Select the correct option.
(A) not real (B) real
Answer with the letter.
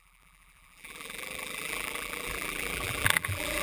A